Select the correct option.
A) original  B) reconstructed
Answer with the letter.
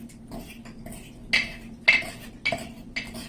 A